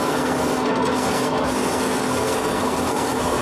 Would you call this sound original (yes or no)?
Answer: no